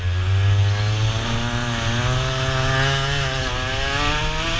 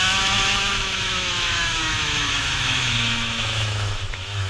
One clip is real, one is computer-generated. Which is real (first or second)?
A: first